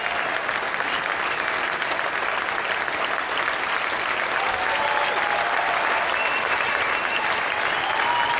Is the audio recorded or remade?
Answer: recorded